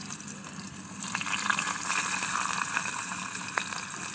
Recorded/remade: remade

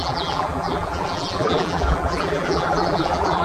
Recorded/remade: remade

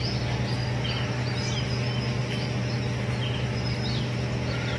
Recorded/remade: recorded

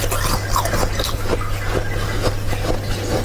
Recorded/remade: recorded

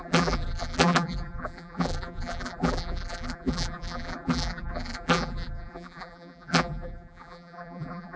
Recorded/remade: remade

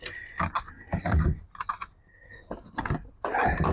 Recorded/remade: recorded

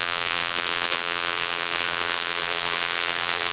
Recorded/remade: remade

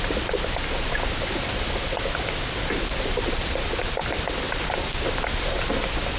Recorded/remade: recorded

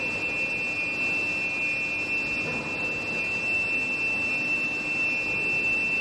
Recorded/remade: recorded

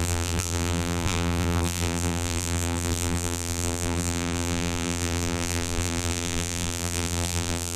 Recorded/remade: remade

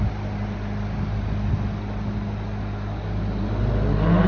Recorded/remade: recorded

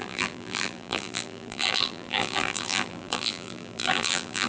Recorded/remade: remade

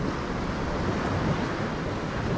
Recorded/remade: recorded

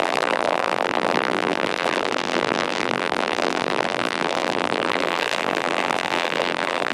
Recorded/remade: remade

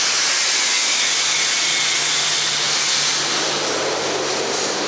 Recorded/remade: recorded